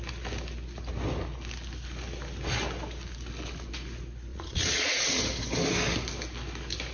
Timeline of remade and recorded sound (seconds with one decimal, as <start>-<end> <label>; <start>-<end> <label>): 0.0-4.3 recorded; 4.3-5.2 remade; 5.2-6.9 recorded